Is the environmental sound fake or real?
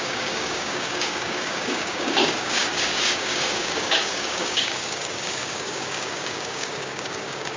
fake